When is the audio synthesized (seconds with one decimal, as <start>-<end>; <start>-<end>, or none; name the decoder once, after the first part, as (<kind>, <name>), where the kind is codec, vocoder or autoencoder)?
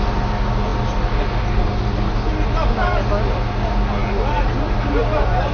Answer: none